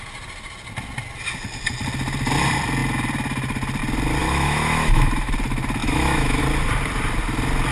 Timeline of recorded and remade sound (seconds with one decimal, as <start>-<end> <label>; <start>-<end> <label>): 0.0-4.2 recorded; 4.2-5.3 remade; 5.3-5.8 recorded; 5.8-6.4 remade; 6.4-7.7 recorded